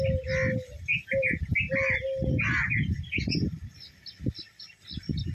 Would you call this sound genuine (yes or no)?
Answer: yes